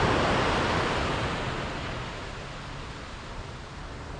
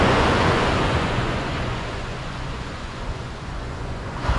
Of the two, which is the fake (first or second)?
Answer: second